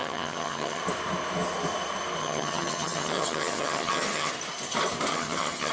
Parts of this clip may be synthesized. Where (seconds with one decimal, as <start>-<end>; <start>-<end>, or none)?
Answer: 0.0-0.8; 2.2-4.3; 5.1-5.7